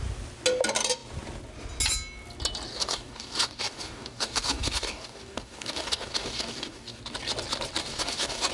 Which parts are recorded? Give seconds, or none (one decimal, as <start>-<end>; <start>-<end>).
0.0-2.7; 7.0-7.8